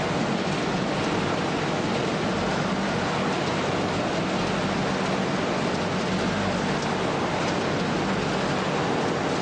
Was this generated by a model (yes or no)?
no